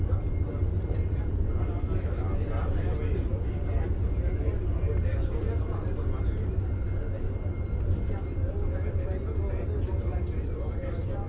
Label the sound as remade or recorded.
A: recorded